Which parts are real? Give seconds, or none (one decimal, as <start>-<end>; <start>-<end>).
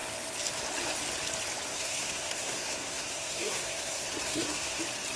0.0-1.7; 4.8-5.2